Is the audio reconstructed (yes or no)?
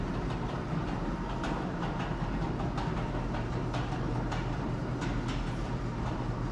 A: yes